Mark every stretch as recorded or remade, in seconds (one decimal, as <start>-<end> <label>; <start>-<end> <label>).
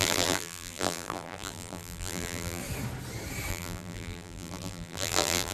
0.0-2.6 remade; 2.6-3.5 recorded; 3.5-5.5 remade